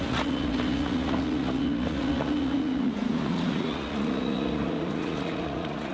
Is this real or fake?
fake